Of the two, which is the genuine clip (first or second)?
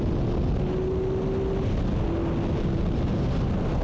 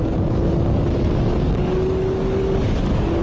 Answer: first